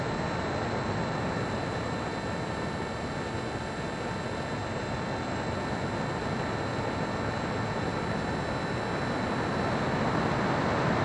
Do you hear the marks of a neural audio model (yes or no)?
no